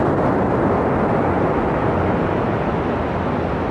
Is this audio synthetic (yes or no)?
no